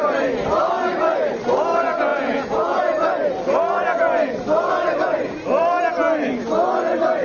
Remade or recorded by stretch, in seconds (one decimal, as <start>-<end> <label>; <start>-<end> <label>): 0.0-2.1 recorded; 2.1-2.8 remade; 2.8-7.2 recorded